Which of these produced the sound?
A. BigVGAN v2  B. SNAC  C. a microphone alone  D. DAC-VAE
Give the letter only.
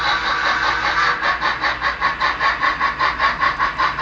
C